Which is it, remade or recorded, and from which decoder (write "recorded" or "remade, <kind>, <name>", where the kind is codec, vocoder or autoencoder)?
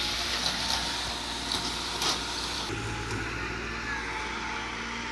recorded